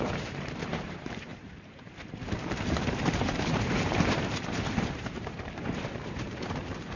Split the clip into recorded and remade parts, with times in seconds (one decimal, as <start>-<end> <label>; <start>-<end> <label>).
0.0-7.0 remade